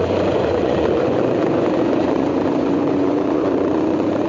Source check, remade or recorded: remade